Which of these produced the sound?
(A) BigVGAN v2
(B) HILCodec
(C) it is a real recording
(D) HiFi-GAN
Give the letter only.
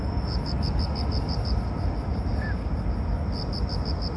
C